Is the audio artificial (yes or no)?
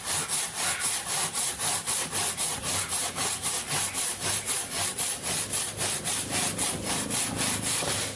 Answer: yes